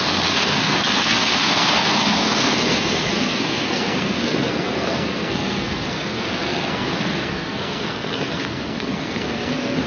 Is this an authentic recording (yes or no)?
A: no